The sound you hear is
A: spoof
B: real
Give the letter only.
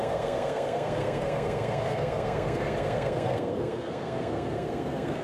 A